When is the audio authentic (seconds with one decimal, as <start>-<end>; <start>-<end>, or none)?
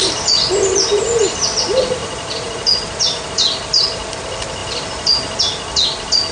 0.0-6.3